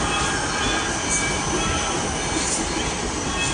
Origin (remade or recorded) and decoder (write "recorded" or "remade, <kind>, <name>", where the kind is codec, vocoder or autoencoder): recorded